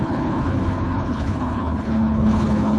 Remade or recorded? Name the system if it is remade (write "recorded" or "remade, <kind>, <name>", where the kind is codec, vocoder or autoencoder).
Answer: remade, codec, HILCodec